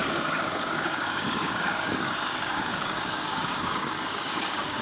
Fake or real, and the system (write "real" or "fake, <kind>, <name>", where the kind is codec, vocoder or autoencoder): fake, codec, DAC